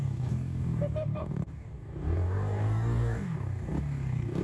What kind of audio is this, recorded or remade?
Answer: remade